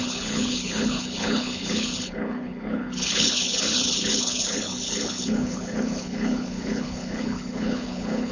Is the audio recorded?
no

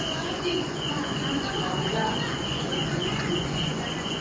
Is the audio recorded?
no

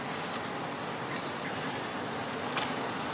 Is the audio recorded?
yes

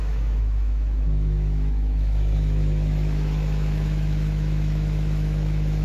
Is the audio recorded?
no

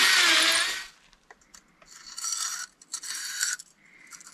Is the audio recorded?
yes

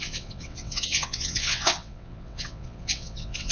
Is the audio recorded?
no